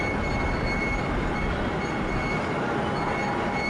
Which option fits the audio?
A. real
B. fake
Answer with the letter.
A